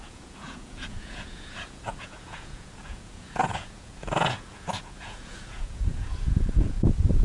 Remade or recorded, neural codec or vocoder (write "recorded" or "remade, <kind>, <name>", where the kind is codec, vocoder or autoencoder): remade, vocoder, Vocos